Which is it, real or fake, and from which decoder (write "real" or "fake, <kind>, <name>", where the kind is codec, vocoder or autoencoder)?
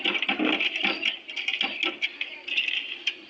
real